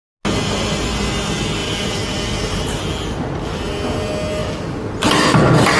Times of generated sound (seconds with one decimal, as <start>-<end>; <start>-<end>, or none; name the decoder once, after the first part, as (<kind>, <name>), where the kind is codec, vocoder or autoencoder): 1.6-2.8 (vocoder, BigVGAN v2)